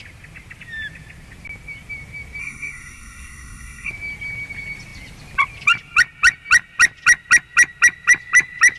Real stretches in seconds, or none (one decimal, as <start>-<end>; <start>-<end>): 0.0-2.4; 3.9-8.8

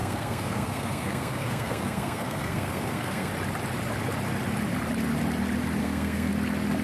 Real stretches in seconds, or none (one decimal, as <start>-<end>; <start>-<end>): 3.3-5.8; 6.3-6.8

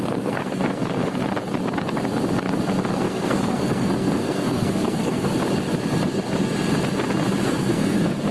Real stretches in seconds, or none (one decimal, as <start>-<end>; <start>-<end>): 1.2-2.9; 5.3-7.4

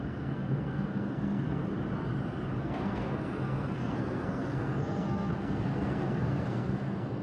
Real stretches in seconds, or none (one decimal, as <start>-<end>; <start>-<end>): 1.6-2.6

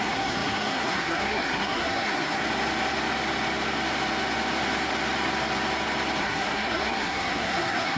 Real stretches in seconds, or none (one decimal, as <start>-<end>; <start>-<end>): 2.4-6.2

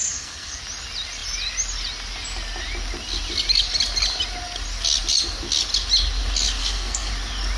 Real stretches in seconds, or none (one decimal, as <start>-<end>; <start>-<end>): 0.6-6.6; 7.1-7.6

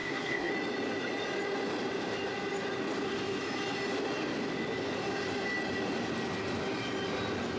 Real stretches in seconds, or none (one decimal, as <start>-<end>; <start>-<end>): 0.5-7.6